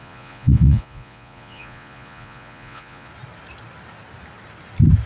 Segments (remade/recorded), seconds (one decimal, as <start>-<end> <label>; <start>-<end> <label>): 0.0-3.1 remade; 3.1-5.1 recorded